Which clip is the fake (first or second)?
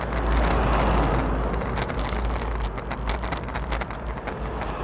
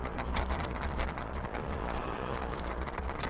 second